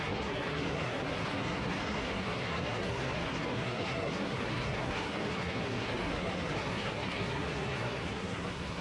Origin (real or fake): fake